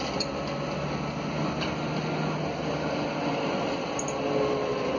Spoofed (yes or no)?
no